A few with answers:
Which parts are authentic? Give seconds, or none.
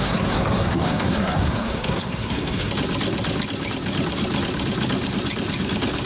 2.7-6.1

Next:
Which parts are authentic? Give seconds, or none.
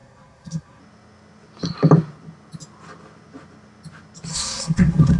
0.8-4.3